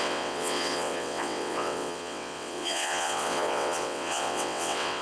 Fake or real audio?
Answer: fake